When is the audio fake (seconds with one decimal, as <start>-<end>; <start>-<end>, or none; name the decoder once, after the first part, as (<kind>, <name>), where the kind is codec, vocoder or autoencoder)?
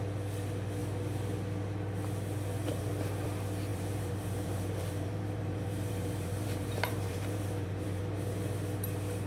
3.7-8.0 (vocoder, BigVGAN v2)